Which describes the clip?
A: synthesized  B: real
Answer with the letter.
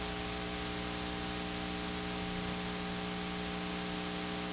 B